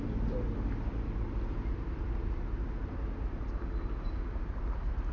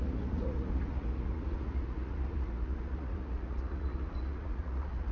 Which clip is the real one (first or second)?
first